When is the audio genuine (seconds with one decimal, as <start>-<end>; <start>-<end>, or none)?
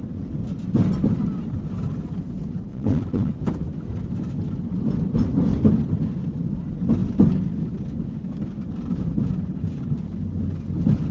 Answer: 0.0-2.7; 3.3-11.1